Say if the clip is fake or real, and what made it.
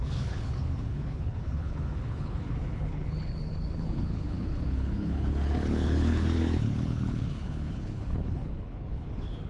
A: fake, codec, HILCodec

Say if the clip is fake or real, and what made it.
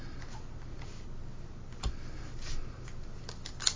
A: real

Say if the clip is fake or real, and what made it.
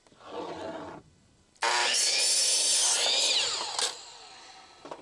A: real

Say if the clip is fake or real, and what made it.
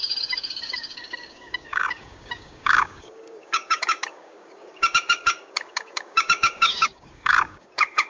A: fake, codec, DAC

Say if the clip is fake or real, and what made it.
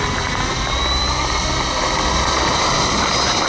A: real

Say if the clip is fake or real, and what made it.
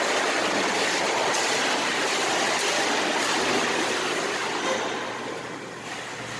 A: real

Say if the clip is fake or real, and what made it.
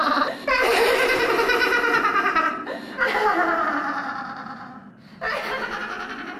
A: fake, vocoder, BigVGAN v2